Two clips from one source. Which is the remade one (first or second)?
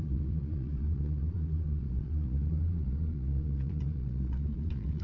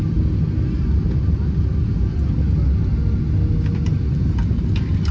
first